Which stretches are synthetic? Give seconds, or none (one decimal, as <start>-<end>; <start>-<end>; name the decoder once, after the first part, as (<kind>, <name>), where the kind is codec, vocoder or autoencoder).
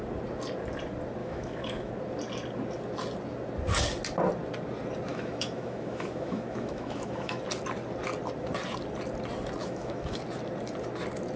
1.2-1.9 (autoencoder, DAC-VAE); 5.1-7.4; 9.6-10.2